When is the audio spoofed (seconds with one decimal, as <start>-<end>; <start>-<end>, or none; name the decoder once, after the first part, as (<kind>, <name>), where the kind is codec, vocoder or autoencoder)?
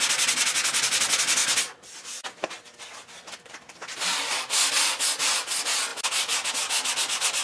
none